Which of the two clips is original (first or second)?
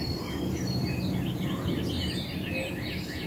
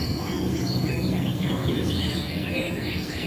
first